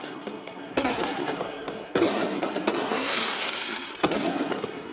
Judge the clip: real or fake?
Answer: fake